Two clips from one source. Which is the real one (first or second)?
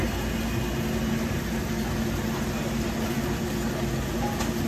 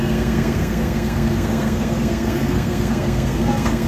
first